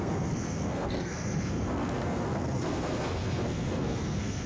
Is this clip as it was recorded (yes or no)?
no